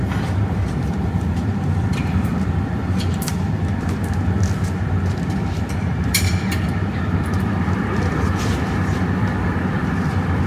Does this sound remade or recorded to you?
remade